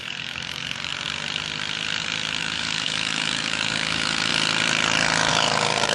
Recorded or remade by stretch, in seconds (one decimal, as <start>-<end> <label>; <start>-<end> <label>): 0.0-0.9 remade; 0.9-2.4 recorded; 2.4-4.3 remade; 4.3-5.3 recorded; 5.3-5.9 remade

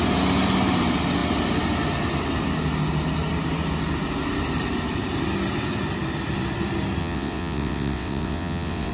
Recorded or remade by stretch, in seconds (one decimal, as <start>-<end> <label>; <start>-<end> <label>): 0.0-7.0 recorded; 7.0-8.9 remade

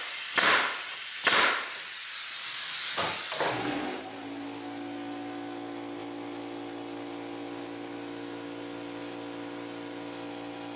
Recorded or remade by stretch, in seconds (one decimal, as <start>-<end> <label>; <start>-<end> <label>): 0.0-10.8 recorded

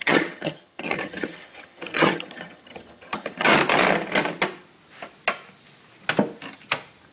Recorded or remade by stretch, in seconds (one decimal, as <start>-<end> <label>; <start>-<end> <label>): 0.0-3.5 remade; 3.5-7.1 recorded

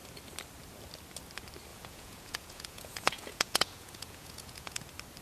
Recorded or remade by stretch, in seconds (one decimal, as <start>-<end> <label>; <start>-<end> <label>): 0.0-1.7 recorded; 1.7-4.8 remade; 4.8-5.2 recorded

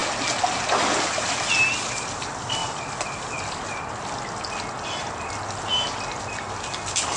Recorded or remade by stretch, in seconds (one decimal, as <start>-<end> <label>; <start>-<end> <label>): 0.0-7.2 recorded